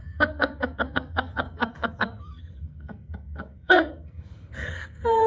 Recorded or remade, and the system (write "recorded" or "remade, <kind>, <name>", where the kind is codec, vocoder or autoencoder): remade, codec, SNAC